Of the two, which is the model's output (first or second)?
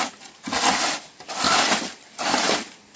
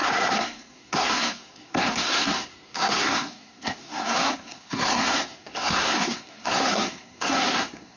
second